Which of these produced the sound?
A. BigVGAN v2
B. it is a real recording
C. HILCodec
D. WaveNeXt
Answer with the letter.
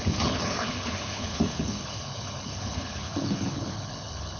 C